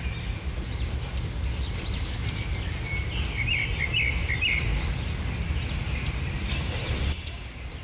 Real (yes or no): yes